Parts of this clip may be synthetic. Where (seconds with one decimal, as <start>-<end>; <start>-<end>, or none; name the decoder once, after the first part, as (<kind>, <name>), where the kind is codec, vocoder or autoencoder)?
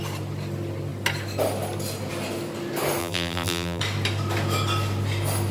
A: 3.0-3.8 (vocoder, BigVGAN v2)